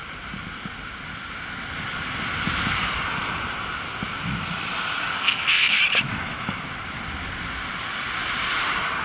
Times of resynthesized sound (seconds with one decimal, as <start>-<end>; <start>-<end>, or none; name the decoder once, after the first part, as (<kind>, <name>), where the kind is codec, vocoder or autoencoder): 5.1-5.8 (codec, SNAC)